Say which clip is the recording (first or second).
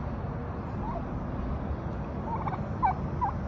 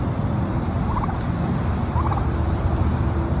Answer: first